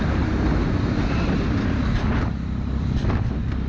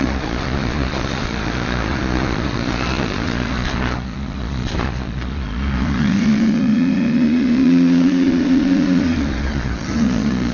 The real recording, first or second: first